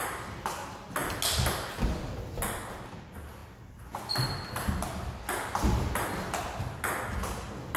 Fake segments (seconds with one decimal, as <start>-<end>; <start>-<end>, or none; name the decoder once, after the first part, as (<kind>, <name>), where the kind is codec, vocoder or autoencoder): none